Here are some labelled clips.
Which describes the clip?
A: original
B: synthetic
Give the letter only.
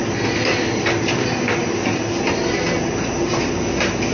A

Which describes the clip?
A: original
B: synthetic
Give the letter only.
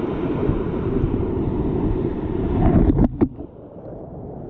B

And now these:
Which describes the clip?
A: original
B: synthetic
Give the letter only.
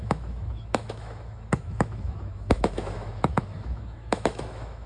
B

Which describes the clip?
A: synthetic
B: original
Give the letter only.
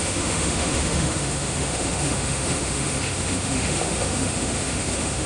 A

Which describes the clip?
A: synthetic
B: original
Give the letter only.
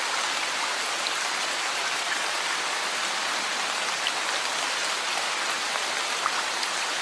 B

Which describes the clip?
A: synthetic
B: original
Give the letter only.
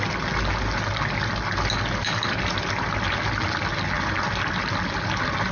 B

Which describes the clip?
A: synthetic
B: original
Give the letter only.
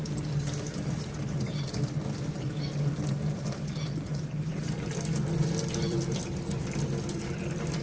A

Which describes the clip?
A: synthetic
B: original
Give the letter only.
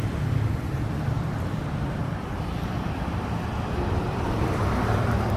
A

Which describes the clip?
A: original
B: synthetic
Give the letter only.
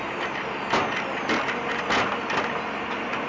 A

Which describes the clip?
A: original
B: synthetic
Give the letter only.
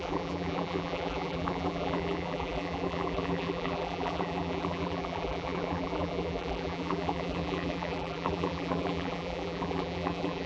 B